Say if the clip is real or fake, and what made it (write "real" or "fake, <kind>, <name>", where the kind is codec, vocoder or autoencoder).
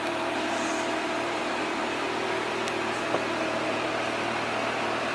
real